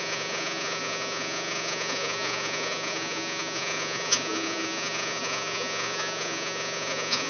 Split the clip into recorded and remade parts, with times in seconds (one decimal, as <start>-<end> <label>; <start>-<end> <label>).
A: 0.0-7.3 remade